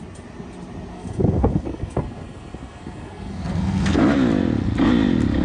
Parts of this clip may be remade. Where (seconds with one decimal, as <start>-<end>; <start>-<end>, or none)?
0.9-4.0